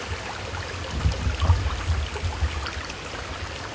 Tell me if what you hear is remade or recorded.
recorded